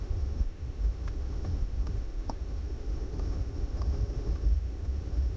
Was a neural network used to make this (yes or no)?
yes